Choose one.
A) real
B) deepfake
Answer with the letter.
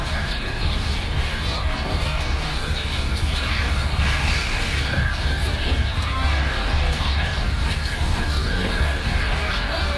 B